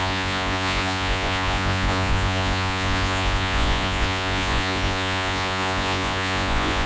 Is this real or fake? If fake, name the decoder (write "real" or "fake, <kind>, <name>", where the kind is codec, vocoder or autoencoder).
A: fake, vocoder, Vocos